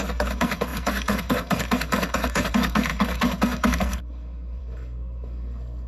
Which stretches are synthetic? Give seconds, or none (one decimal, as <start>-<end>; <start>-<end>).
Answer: 0.0-5.9